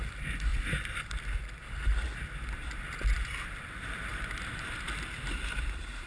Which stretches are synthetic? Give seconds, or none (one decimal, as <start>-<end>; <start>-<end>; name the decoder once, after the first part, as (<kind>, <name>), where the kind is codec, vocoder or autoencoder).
0.5-1.4 (vocoder, BigVGAN v2); 4.1-6.1